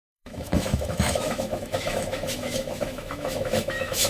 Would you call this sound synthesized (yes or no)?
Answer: yes